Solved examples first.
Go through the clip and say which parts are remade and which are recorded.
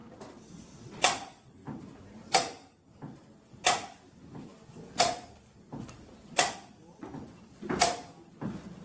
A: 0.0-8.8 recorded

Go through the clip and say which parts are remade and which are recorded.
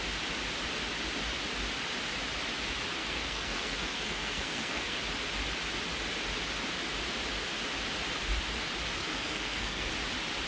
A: 0.0-3.0 recorded; 3.0-5.0 remade; 5.0-9.0 recorded; 9.0-9.9 remade; 9.9-10.5 recorded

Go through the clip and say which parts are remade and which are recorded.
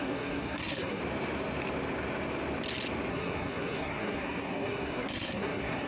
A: 0.0-1.0 remade; 1.0-3.1 recorded; 3.1-5.9 remade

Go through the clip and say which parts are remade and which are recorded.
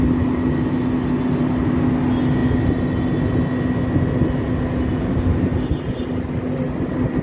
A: 0.0-7.2 recorded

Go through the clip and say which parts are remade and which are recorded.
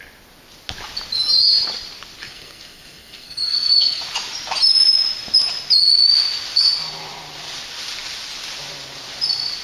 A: 0.0-2.2 recorded; 2.2-4.0 remade; 4.0-9.6 recorded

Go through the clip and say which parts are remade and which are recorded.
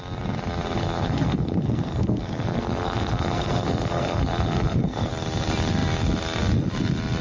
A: 0.0-0.8 recorded; 0.8-5.1 remade; 5.1-7.2 recorded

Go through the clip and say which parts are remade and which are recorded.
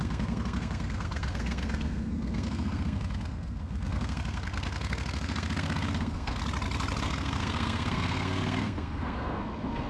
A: 0.0-6.4 remade; 6.4-7.0 recorded; 7.0-9.9 remade